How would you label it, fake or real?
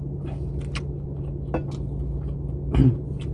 real